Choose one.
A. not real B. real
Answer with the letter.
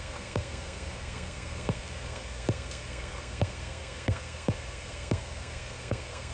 A